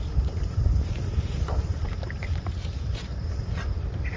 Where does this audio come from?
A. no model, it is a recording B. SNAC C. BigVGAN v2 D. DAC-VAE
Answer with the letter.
C